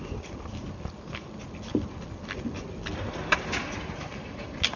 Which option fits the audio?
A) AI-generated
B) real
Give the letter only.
B